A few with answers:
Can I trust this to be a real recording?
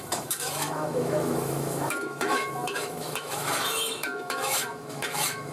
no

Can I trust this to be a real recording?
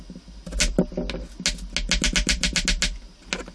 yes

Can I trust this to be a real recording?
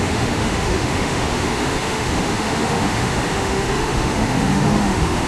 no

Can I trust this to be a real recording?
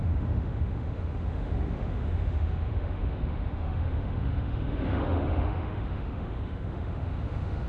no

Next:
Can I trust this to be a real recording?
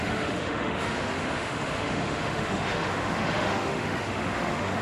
no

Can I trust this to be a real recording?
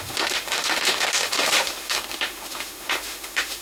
no